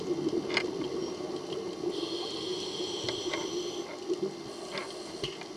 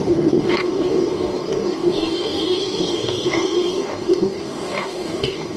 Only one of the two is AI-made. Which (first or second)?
second